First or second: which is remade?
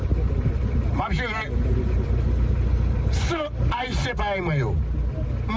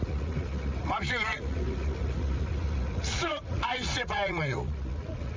second